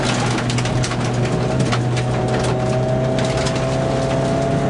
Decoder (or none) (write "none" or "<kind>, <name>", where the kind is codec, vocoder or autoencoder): none